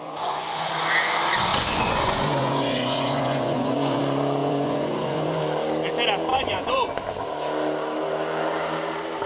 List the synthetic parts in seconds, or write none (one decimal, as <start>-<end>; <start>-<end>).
0.0-0.7; 1.5-4.0; 4.4-5.4; 6.3-6.9